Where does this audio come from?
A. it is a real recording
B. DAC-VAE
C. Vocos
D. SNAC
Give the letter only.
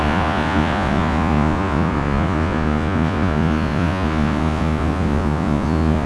C